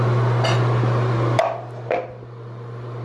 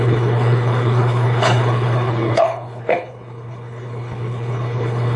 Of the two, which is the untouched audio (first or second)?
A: first